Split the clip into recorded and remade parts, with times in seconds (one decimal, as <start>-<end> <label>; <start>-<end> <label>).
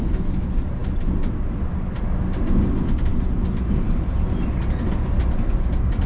0.0-6.1 recorded